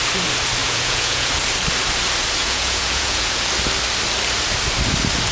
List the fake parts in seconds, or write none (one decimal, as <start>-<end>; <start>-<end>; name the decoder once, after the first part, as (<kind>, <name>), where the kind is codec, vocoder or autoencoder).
0.6-1.3 (vocoder, Vocos); 2.4-3.5